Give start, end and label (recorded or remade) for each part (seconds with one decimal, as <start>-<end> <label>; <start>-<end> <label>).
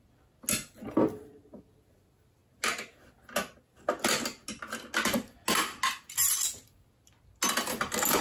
0.0-8.2 recorded